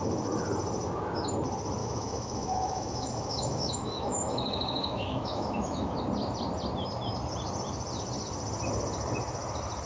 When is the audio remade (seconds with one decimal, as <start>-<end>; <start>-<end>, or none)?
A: 1.8-6.0